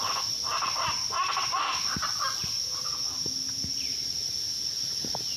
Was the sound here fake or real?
real